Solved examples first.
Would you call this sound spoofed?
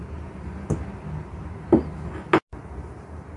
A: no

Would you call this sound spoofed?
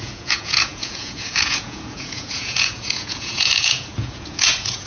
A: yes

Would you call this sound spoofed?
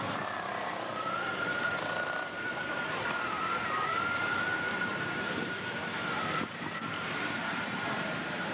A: yes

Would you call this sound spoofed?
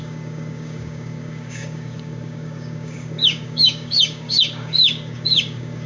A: yes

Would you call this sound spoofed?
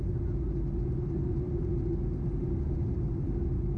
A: no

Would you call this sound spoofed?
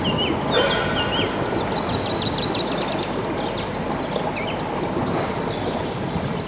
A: no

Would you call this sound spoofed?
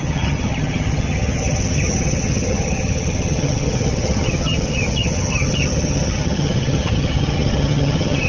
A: yes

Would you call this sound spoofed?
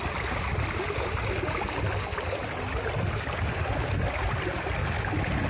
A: no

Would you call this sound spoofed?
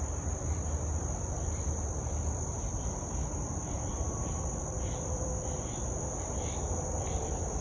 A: yes